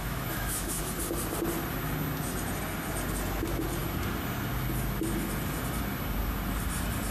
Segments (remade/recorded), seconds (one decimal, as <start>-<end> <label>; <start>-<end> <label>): 0.0-0.8 remade; 0.8-7.1 recorded